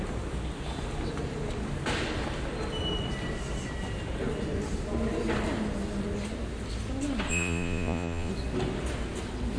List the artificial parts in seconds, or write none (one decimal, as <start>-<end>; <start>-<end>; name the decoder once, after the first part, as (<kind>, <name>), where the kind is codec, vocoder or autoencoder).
7.3-8.3 (vocoder, Vocos)